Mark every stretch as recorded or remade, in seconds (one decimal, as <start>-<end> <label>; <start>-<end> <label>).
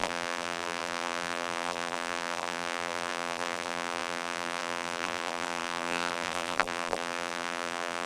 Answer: 0.0-8.1 remade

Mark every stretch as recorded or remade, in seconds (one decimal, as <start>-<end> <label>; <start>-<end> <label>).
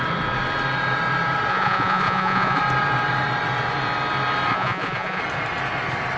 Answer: 0.0-1.5 recorded; 1.5-2.6 remade; 2.6-4.5 recorded; 4.5-5.2 remade; 5.2-6.2 recorded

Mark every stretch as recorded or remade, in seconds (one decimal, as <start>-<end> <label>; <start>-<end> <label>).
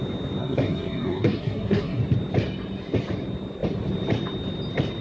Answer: 0.0-0.4 recorded; 0.4-2.0 remade; 2.0-5.0 recorded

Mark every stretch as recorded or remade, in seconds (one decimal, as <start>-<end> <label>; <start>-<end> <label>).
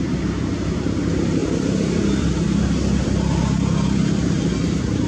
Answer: 0.0-5.1 remade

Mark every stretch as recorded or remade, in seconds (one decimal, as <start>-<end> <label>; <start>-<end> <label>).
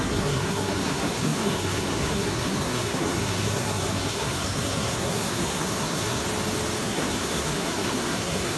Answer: 0.0-6.2 remade; 6.2-6.8 recorded; 6.8-8.6 remade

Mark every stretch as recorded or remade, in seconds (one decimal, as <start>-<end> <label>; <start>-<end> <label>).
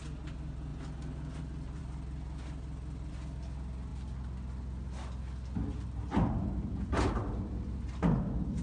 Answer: 0.0-8.6 recorded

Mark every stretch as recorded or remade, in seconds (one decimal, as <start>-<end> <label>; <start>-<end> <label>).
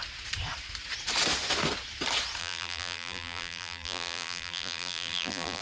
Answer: 0.0-2.4 recorded; 2.4-5.6 remade